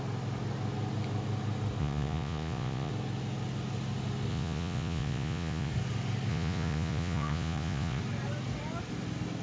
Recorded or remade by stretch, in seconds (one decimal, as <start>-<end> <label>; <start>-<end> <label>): 0.0-1.8 recorded; 1.8-2.9 remade; 2.9-4.3 recorded; 4.3-5.7 remade; 5.7-6.3 recorded; 6.3-8.0 remade; 8.0-9.4 recorded